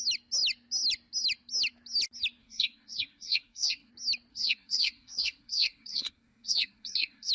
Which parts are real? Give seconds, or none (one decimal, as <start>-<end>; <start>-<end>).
0.0-2.4; 3.9-4.3